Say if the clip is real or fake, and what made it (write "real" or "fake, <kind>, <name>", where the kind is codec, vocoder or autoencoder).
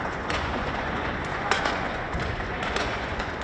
fake, vocoder, Vocos